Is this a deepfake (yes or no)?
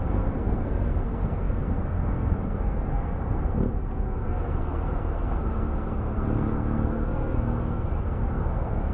yes